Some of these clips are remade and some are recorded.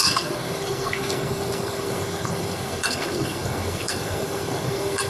remade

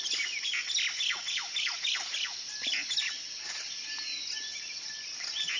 recorded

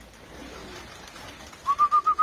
recorded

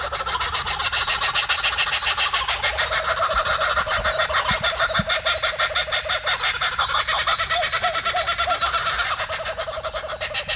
recorded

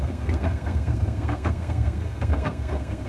remade